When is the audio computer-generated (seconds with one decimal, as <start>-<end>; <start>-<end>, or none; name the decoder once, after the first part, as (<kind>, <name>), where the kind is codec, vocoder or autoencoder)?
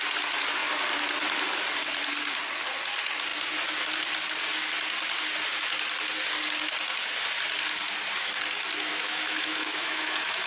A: 8.9-10.5 (autoencoder, DAC-VAE)